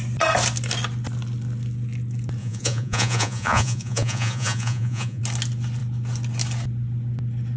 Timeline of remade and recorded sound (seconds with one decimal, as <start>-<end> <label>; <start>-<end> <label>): 0.0-2.4 recorded; 2.4-5.2 remade; 5.2-7.6 recorded